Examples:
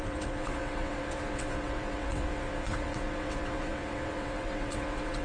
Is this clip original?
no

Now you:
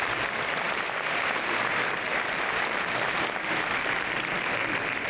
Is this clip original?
yes